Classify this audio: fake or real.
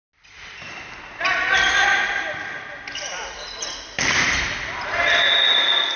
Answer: real